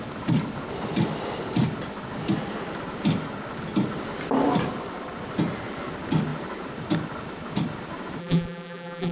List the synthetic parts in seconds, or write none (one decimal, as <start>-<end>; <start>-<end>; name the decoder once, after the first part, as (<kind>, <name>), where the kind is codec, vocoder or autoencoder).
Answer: 8.2-9.1 (vocoder, BigVGAN v2)